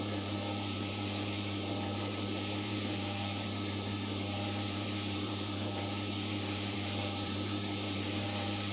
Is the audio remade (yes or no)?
yes